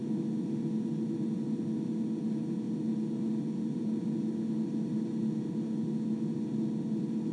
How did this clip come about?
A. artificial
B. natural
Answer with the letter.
B